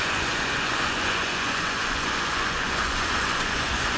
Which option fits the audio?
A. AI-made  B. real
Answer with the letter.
A